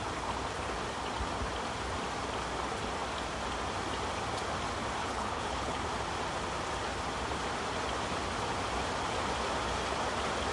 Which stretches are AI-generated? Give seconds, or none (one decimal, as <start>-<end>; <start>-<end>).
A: 5.0-5.8